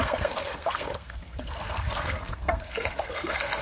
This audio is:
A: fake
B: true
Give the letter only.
A